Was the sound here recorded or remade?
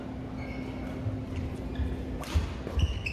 recorded